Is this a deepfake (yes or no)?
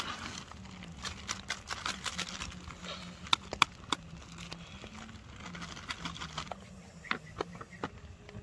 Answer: no